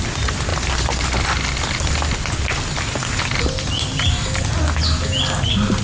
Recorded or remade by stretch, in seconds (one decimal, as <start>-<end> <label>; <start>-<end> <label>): 0.0-5.8 recorded